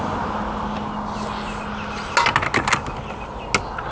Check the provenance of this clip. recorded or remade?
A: recorded